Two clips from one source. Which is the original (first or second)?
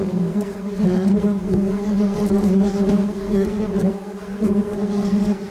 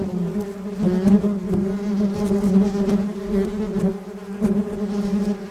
second